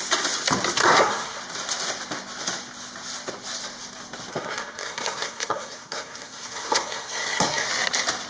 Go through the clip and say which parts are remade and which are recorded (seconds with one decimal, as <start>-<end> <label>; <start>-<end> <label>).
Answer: 0.0-0.8 recorded; 0.8-1.4 remade; 1.4-4.3 recorded; 4.3-7.7 remade; 7.7-8.3 recorded